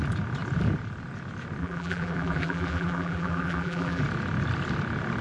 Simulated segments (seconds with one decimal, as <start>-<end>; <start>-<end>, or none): 1.6-4.0